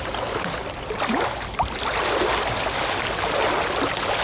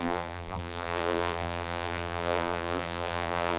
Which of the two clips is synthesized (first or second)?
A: second